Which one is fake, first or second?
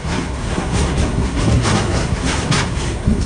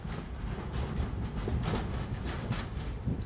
first